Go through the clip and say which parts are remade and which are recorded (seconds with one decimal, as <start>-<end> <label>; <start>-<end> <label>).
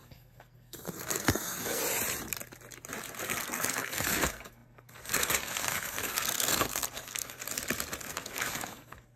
0.0-1.8 remade; 1.8-3.2 recorded; 3.2-7.4 remade; 7.4-8.0 recorded; 8.0-9.2 remade